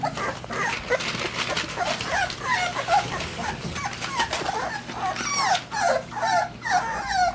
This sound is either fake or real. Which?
real